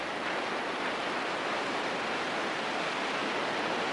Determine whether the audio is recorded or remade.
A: recorded